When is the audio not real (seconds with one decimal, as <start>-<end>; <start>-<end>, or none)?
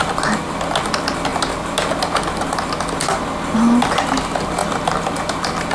none